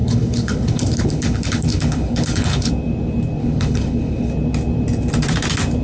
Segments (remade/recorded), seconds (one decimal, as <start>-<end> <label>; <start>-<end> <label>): 0.0-2.7 remade; 2.7-3.4 recorded; 3.4-4.3 remade; 4.3-5.8 recorded